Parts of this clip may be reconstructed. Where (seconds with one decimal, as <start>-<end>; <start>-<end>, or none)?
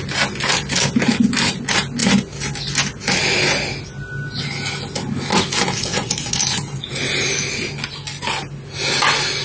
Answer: 5.9-6.9